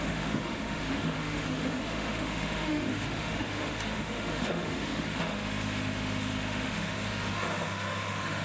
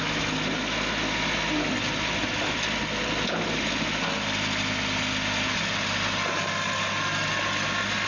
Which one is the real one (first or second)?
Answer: second